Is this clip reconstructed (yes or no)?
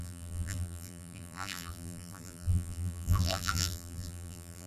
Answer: yes